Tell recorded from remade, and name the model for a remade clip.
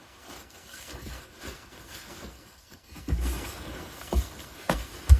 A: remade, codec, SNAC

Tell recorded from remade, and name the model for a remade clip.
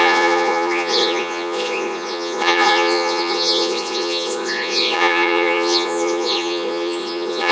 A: remade, vocoder, Vocos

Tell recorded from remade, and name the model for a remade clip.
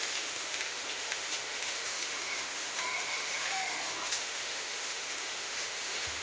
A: remade, autoencoder, DAC-VAE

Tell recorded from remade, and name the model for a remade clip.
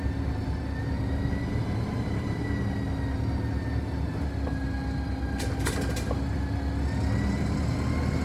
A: recorded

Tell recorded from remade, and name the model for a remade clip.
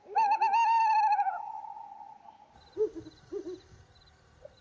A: recorded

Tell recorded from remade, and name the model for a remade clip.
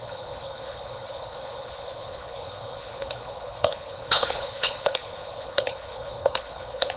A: remade, codec, HILCodec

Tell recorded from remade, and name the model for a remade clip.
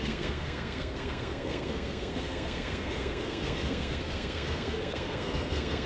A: remade, codec, SNAC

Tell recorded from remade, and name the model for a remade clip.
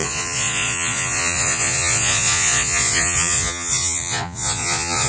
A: remade, vocoder, Vocos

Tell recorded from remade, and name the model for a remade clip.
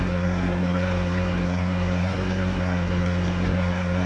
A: remade, codec, SNAC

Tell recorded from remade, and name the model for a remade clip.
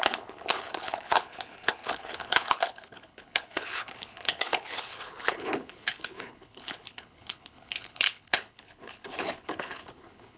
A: remade, codec, HILCodec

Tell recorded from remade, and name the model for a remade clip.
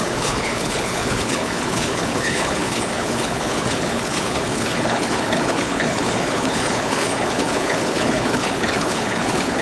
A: remade, codec, HILCodec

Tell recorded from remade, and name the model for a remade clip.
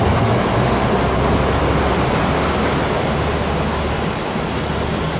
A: recorded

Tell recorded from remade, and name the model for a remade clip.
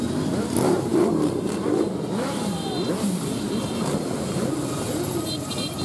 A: remade, vocoder, BigVGAN v2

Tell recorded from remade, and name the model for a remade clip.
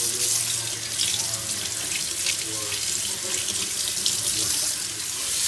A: recorded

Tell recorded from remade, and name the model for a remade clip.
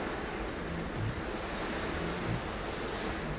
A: recorded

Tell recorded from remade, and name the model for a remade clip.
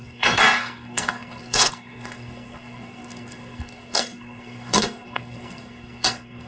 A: remade, codec, SNAC